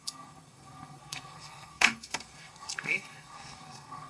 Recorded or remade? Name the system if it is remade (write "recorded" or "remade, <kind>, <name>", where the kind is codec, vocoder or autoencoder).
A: remade, codec, SNAC